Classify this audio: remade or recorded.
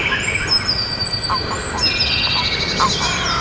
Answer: recorded